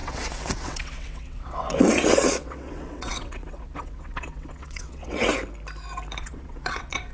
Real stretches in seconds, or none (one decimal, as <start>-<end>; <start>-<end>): 5.3-6.2